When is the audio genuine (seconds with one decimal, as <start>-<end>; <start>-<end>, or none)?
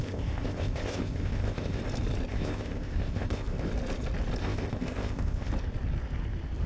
1.8-2.3; 3.7-4.4; 5.5-6.7